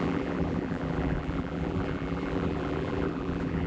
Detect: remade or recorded remade